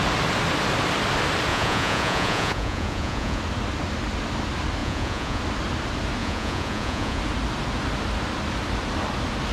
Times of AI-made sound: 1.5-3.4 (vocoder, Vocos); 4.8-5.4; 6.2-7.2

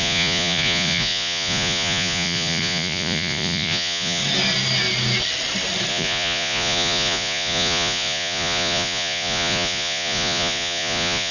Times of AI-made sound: 0.0-4.2 (vocoder, Vocos); 5.9-11.3

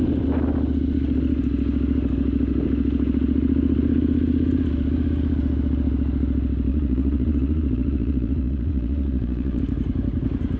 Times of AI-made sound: 6.7-9.6 (vocoder, Vocos)

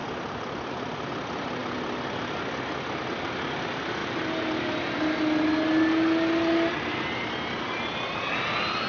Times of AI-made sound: none

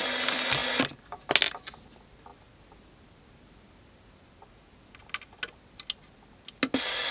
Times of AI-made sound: none

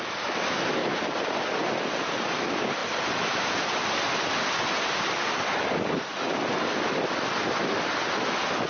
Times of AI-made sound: 0.8-1.7 (vocoder, BigVGAN v2); 2.8-3.8

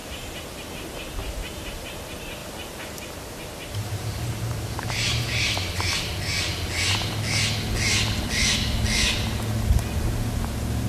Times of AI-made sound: 0.0-0.7 (vocoder, BigVGAN v2); 1.2-1.8; 2.4-6.0

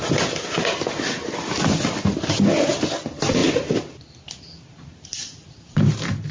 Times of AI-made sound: none